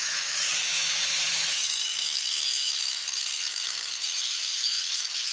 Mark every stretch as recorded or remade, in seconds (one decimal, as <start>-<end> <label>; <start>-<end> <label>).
0.0-3.0 remade; 3.0-3.5 recorded; 3.5-5.3 remade